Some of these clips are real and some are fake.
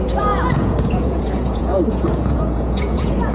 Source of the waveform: fake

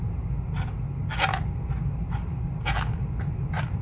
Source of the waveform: real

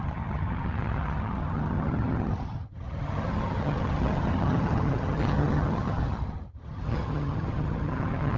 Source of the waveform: fake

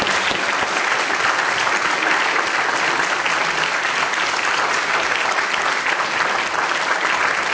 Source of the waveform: real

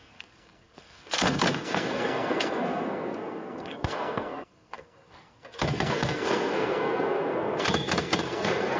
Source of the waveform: fake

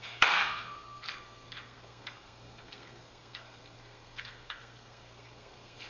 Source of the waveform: fake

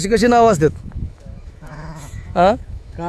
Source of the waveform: fake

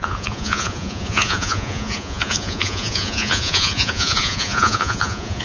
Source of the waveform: fake